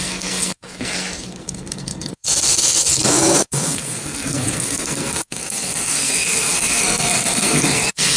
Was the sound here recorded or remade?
remade